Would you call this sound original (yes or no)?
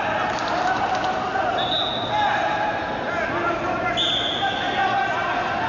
yes